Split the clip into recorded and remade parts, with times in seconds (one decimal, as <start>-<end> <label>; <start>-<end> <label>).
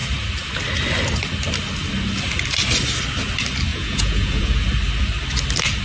0.0-3.7 recorded; 3.7-4.6 remade; 4.6-5.8 recorded